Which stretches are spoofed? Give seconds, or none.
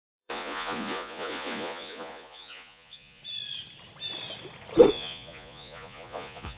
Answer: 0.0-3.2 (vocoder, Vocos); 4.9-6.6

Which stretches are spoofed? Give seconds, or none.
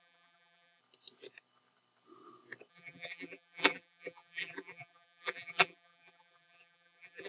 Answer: 0.0-0.8 (vocoder, BigVGAN v2); 2.7-7.3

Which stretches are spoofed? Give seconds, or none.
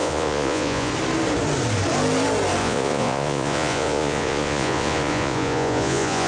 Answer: 0.0-0.9 (vocoder, Vocos); 2.6-6.3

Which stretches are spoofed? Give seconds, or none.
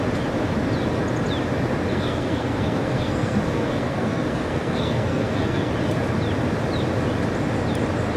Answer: 1.9-5.7 (codec, SNAC)